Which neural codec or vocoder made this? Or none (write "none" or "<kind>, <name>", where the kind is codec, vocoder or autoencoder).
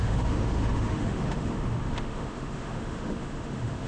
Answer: autoencoder, DAC-VAE